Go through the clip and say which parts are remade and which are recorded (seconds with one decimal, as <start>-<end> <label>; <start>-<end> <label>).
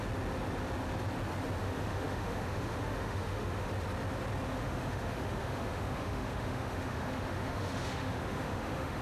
0.0-1.6 recorded; 1.6-3.7 remade; 3.7-4.5 recorded; 4.5-9.0 remade